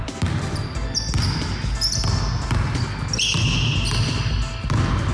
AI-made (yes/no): no